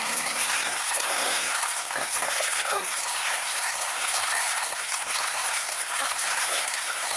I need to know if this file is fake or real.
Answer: fake